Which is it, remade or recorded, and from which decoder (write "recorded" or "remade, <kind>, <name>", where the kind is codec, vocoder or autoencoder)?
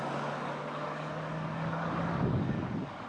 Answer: remade, codec, DAC